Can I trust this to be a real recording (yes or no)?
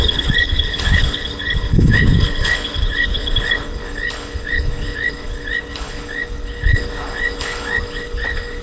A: no